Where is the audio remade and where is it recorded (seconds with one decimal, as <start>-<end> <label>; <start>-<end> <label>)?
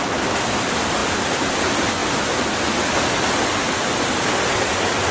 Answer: 0.0-5.1 recorded